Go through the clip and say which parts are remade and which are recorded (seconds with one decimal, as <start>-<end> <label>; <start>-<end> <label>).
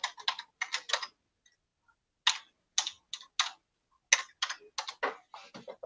0.0-5.9 recorded